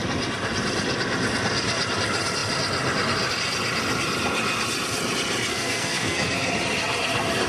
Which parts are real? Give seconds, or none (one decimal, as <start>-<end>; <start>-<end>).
0.0-5.5; 6.5-7.5